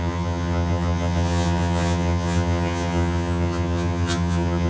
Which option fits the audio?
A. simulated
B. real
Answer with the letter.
A